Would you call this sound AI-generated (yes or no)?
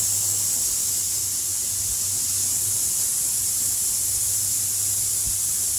no